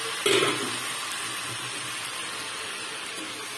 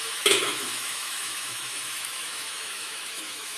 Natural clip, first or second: first